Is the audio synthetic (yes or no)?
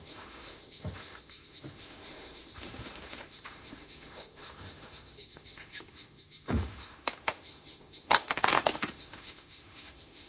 yes